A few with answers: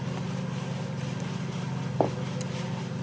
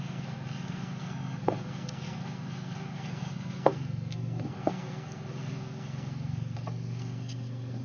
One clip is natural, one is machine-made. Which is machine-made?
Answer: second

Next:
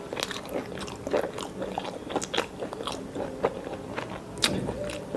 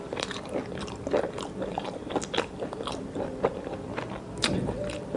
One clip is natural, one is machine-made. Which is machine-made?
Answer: second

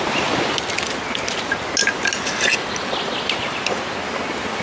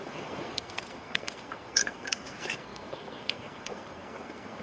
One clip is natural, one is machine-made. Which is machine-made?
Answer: second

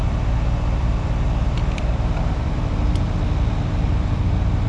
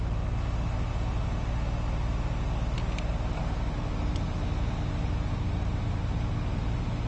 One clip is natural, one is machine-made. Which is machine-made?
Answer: first